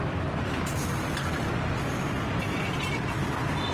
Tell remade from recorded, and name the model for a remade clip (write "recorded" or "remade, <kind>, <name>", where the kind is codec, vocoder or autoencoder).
recorded